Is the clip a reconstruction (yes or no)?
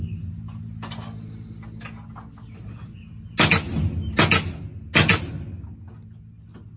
no